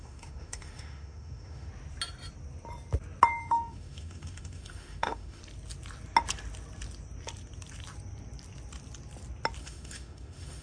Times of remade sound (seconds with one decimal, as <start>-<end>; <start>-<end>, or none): 0.0-1.7; 3.4-5.4; 9.6-10.6